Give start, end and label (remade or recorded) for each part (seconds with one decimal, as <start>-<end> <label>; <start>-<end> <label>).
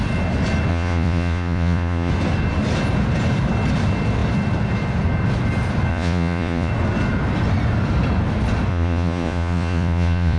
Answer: 0.0-0.7 recorded; 0.7-2.1 remade; 2.1-5.9 recorded; 5.9-6.7 remade; 6.7-8.7 recorded; 8.7-10.4 remade